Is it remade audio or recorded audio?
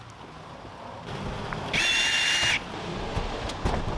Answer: recorded